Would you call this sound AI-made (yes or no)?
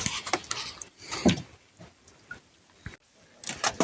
no